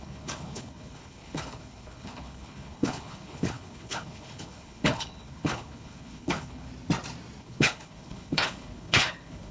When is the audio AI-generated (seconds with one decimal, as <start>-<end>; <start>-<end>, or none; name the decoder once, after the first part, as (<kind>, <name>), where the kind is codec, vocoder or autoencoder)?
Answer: 0.0-6.7 (codec, HILCodec); 7.4-9.5